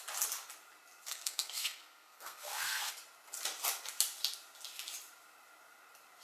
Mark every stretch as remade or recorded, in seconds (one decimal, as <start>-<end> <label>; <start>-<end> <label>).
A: 0.0-1.1 recorded; 1.1-2.9 remade; 2.9-6.2 recorded